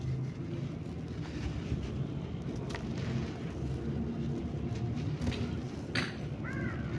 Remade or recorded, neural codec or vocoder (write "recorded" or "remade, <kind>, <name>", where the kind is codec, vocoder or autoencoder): recorded